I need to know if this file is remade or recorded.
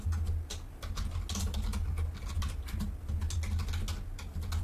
recorded